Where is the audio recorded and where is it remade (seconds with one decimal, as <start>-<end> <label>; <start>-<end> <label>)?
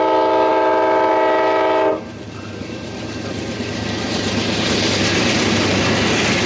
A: 0.0-1.9 recorded; 1.9-5.8 remade; 5.8-6.5 recorded